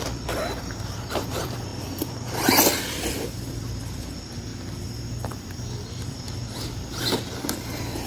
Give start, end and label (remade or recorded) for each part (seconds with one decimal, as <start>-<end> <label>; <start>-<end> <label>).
0.0-4.5 remade; 4.5-5.3 recorded; 5.3-8.1 remade